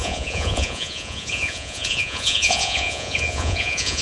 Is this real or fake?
fake